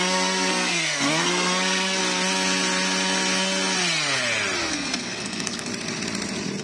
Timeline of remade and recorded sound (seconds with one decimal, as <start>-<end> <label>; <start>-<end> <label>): 0.0-2.0 remade; 2.0-4.7 recorded; 4.7-5.7 remade; 5.7-6.6 recorded